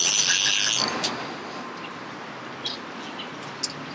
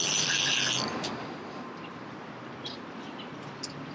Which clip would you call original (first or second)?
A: first